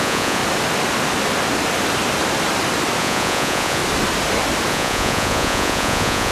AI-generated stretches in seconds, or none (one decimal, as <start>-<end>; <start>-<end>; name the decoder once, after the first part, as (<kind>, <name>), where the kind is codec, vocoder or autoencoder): 0.0-0.4 (vocoder, Vocos); 3.0-3.8; 4.7-6.3